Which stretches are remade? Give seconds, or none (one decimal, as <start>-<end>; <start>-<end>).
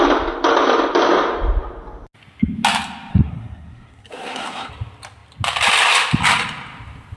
3.1-4.7